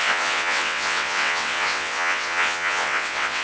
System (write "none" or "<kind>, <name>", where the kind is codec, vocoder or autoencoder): vocoder, WaveNeXt